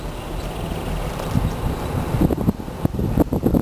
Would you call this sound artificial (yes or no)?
yes